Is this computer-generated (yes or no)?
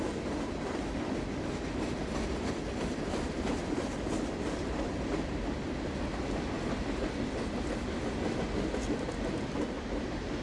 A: no